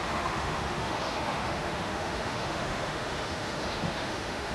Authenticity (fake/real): fake